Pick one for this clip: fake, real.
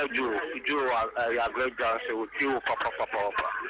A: real